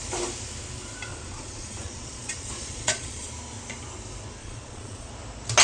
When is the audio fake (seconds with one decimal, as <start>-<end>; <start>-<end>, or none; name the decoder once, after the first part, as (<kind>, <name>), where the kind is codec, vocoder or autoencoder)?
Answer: 1.1-3.3 (vocoder, Vocos); 4.4-5.1